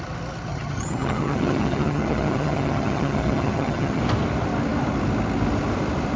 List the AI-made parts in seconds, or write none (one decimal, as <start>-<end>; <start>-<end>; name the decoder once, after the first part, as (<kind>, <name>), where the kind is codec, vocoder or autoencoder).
0.5-4.0 (vocoder, HiFi-GAN)

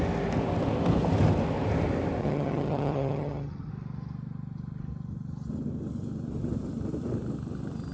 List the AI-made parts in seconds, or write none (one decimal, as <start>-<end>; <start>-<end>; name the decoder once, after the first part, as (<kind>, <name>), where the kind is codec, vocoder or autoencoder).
2.2-3.7 (vocoder, HiFi-GAN)

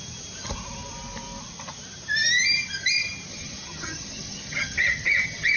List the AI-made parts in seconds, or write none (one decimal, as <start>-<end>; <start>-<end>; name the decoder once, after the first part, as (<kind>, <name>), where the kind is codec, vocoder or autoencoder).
3.3-5.6 (vocoder, HiFi-GAN)